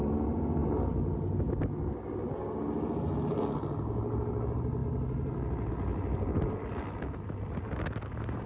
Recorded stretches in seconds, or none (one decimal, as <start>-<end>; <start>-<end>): 0.0-8.5